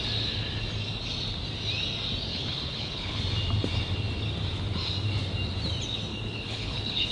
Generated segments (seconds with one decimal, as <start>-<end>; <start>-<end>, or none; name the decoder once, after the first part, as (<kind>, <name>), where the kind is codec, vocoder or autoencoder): 2.3-3.2 (codec, HILCodec); 6.1-7.1